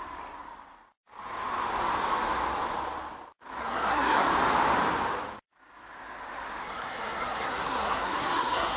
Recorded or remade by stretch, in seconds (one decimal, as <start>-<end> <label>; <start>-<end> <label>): 0.0-3.6 recorded; 3.6-4.3 remade; 4.3-6.6 recorded; 6.6-8.8 remade